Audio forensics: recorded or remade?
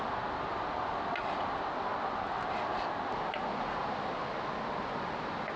recorded